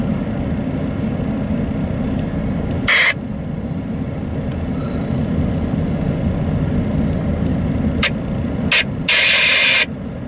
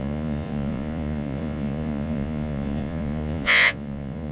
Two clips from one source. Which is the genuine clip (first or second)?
first